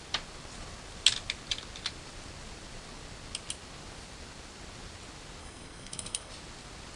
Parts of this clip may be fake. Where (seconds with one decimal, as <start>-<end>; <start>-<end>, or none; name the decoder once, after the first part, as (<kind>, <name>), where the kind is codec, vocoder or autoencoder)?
5.4-6.3 (codec, SNAC)